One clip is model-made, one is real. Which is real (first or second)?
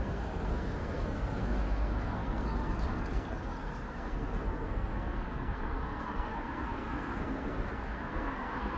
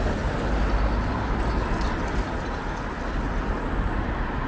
second